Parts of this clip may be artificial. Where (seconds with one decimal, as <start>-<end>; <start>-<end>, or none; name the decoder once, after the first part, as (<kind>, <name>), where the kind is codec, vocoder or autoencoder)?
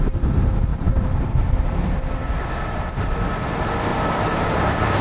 0.7-1.5 (vocoder, BigVGAN v2); 2.2-2.8; 3.9-5.0